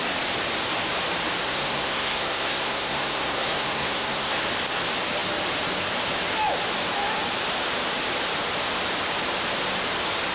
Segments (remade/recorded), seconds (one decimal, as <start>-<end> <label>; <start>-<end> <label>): 0.0-1.4 recorded; 1.4-4.4 remade; 4.4-10.3 recorded